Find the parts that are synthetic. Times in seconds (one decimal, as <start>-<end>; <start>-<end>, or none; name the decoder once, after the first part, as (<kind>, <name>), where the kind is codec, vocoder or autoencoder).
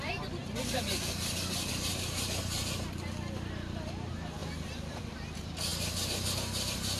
none